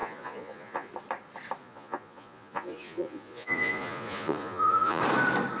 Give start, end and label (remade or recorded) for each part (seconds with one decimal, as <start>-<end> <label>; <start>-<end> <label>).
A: 0.0-0.9 remade; 0.9-1.6 recorded; 1.6-5.0 remade; 5.0-5.6 recorded